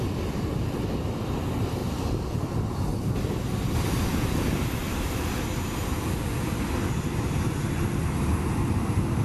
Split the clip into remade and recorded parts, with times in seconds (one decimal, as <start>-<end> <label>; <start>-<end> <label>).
0.0-2.9 remade; 2.9-6.0 recorded; 6.0-8.3 remade; 8.3-9.2 recorded

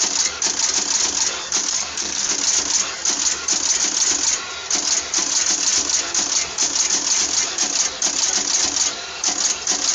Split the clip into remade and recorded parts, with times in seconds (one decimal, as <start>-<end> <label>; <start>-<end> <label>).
0.0-1.7 recorded; 1.7-2.3 remade; 2.3-9.9 recorded

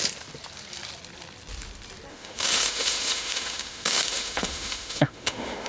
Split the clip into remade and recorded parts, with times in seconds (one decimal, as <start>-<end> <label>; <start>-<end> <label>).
0.0-2.1 recorded; 2.1-5.7 remade